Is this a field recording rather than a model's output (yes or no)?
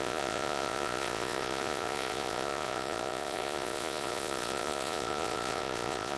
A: no